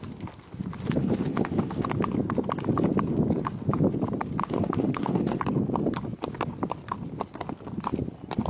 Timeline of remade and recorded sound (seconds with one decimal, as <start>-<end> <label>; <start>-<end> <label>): 0.0-1.0 recorded; 1.0-1.9 remade; 1.9-4.4 recorded; 4.4-5.4 remade; 5.4-8.5 recorded